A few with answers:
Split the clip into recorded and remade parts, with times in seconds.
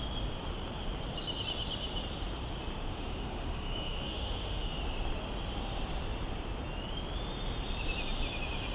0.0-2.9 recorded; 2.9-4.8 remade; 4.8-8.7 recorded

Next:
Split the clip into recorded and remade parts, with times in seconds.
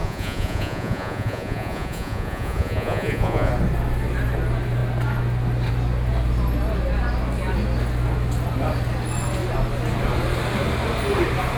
0.0-3.5 remade; 3.5-11.6 recorded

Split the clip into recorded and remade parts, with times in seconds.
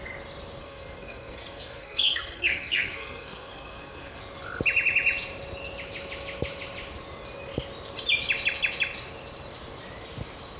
0.0-0.6 recorded; 0.6-4.2 remade; 4.2-10.6 recorded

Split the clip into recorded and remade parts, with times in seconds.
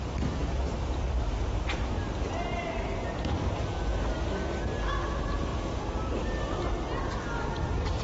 0.0-8.0 recorded